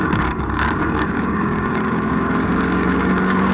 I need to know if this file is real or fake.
fake